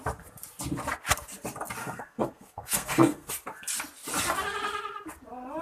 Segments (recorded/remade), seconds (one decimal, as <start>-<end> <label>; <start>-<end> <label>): 0.0-1.8 recorded; 1.8-3.3 remade; 3.3-5.6 recorded